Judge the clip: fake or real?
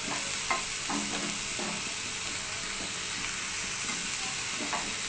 real